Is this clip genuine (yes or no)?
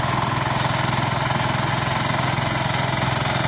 yes